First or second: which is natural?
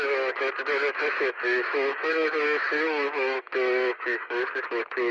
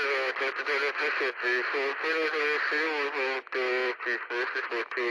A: second